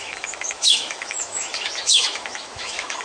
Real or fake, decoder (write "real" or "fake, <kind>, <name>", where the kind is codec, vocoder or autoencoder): fake, autoencoder, DAC-VAE